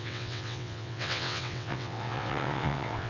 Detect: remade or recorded remade